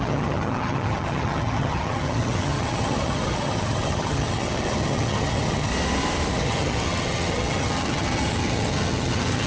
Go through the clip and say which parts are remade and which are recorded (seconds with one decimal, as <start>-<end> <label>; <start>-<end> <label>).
0.0-5.7 remade; 5.7-6.3 recorded; 6.3-9.5 remade